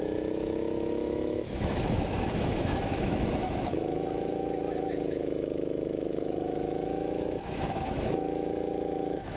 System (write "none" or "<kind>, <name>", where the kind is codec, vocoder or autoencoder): autoencoder, DAC-VAE